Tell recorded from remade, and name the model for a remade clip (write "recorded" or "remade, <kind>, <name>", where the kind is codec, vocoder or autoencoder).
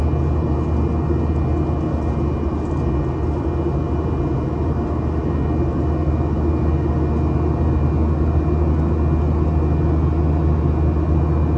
recorded